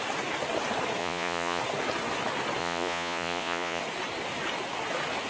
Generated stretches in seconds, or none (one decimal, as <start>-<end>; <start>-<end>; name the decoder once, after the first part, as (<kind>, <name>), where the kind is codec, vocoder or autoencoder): 1.0-1.6 (vocoder, Vocos); 2.6-3.8